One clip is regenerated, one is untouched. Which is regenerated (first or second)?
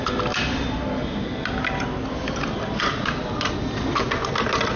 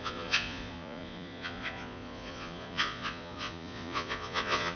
second